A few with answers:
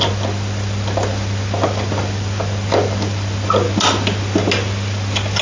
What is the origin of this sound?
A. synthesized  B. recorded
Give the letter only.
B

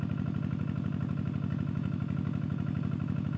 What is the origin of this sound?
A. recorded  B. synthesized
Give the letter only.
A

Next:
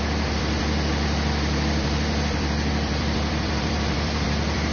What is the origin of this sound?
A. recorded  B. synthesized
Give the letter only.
B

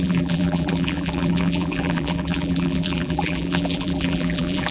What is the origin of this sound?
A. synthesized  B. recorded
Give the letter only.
A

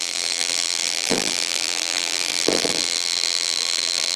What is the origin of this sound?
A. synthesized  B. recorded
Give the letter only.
A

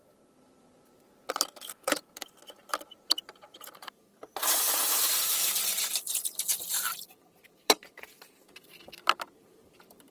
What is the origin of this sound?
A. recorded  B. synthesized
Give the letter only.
B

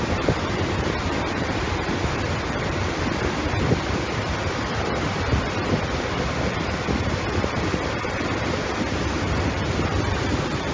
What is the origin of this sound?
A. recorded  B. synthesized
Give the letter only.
B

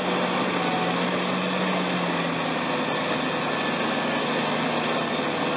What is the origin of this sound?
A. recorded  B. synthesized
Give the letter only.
A